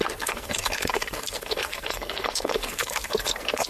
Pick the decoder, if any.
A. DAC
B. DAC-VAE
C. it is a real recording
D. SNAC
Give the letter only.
D